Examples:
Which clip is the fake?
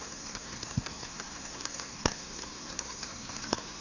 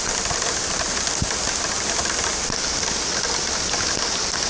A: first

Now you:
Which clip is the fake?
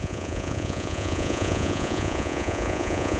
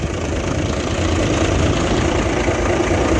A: first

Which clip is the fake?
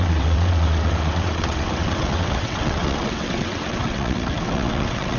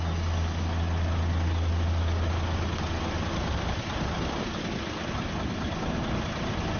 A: first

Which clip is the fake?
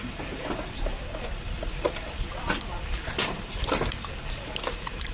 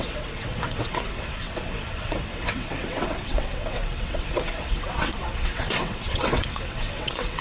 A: second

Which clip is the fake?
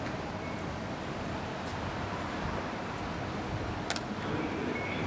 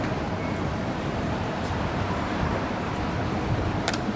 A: second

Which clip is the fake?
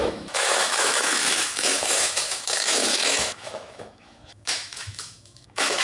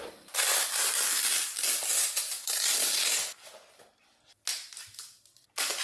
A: first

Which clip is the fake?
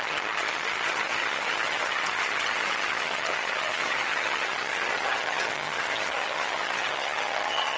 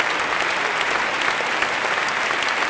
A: first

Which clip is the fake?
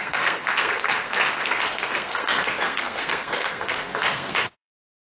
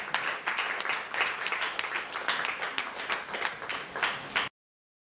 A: first